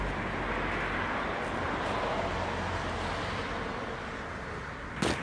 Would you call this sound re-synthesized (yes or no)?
no